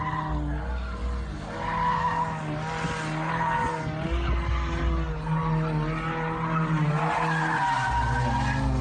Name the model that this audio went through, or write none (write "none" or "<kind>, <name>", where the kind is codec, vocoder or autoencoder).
none